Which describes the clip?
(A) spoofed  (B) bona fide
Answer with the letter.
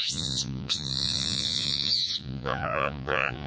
A